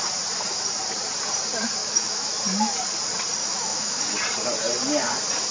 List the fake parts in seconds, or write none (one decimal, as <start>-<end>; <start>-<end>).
1.8-2.4; 3.4-4.0